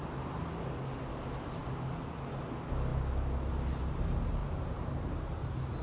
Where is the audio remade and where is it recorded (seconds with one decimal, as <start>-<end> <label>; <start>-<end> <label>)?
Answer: 0.0-4.4 recorded; 4.4-5.8 remade